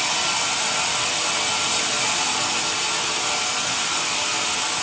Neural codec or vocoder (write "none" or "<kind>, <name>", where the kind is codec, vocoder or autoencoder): none